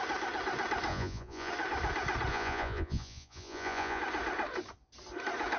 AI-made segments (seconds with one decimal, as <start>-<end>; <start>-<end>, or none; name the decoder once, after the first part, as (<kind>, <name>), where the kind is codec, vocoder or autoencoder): 0.9-1.5 (vocoder, Vocos); 2.3-4.0